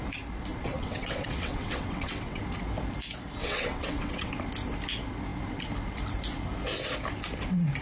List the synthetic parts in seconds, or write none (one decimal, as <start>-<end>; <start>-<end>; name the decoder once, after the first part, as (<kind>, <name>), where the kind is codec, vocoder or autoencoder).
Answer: 0.5-2.4 (vocoder, WaveNeXt); 3.4-4.3